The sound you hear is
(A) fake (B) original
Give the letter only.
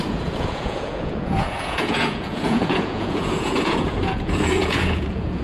A